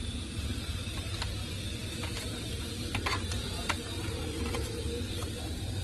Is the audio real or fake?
fake